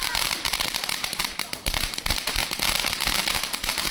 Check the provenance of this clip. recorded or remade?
remade